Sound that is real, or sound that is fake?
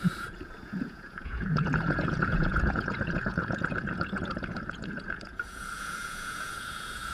fake